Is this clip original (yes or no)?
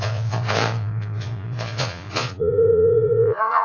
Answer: no